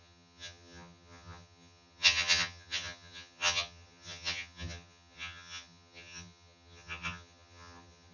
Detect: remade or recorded remade